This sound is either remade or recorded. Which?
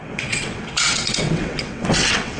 remade